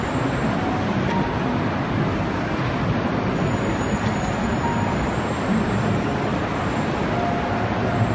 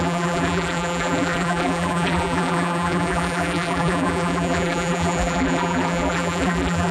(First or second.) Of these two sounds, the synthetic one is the second